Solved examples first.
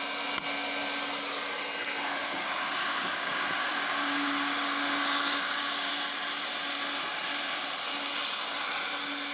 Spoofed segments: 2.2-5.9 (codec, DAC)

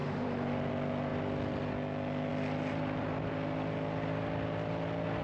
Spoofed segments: none

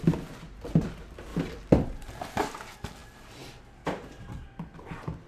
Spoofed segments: 1.3-2.4 (vocoder, BigVGAN v2)